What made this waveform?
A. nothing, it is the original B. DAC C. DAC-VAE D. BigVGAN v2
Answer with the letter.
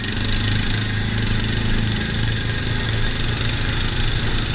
A